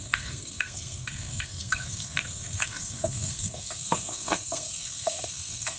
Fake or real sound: fake